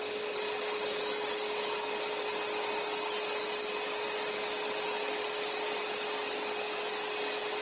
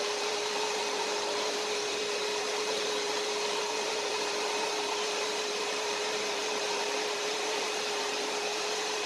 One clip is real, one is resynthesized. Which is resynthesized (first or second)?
second